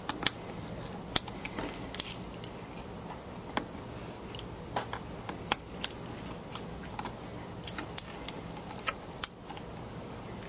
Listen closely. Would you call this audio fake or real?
real